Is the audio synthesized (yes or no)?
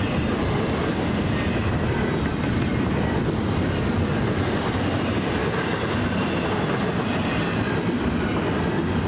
no